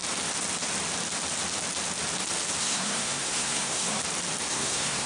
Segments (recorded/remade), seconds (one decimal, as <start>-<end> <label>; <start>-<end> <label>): 0.0-2.6 recorded; 2.6-4.0 remade; 4.0-4.5 recorded; 4.5-5.1 remade

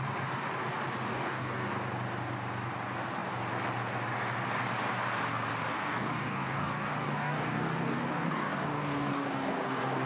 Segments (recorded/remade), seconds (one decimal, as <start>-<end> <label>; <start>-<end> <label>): 0.0-1.1 recorded; 1.1-1.7 remade; 1.7-5.7 recorded; 5.7-10.1 remade

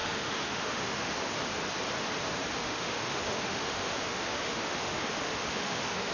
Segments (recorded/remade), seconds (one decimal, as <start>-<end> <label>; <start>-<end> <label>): 0.0-1.1 remade; 1.1-2.6 recorded; 2.6-6.1 remade